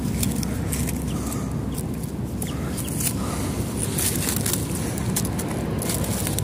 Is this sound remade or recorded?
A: recorded